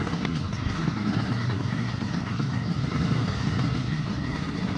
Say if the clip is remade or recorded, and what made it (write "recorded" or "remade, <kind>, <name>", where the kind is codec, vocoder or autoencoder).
remade, codec, SNAC